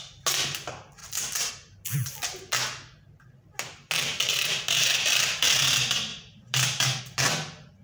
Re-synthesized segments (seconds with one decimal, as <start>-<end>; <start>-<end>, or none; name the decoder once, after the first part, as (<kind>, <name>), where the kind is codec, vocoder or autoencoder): 1.0-1.5 (vocoder, BigVGAN v2); 4.1-5.1; 6.1-7.0